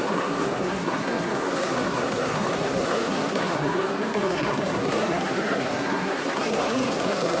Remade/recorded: remade